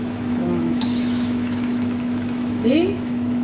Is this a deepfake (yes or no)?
yes